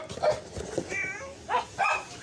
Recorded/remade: recorded